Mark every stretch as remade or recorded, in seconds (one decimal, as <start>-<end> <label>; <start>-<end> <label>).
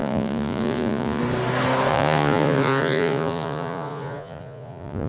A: 0.0-1.2 remade; 1.2-1.9 recorded; 1.9-5.1 remade